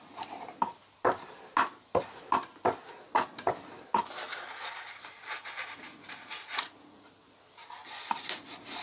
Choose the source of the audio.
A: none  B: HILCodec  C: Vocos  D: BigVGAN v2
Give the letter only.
A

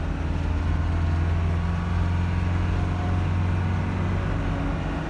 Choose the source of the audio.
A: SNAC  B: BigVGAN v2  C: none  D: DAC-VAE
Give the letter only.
C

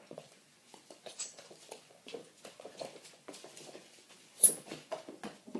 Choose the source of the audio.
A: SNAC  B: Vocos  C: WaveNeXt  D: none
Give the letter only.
B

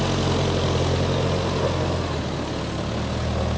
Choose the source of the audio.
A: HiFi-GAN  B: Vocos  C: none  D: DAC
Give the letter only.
C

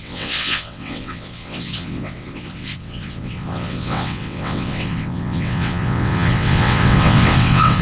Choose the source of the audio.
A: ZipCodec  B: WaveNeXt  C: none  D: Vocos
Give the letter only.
B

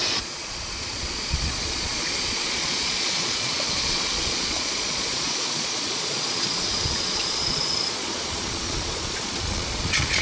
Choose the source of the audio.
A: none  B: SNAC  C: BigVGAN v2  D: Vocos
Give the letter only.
D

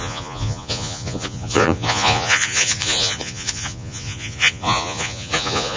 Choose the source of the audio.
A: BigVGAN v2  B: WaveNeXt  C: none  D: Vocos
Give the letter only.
D